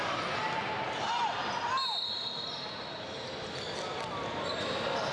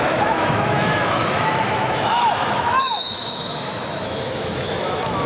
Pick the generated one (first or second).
second